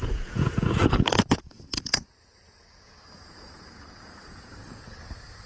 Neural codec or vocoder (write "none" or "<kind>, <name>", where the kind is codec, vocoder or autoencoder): vocoder, Vocos